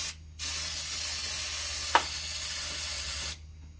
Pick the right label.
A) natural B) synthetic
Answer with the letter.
A